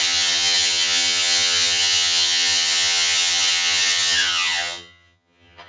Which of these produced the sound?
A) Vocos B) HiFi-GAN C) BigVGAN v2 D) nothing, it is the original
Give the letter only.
B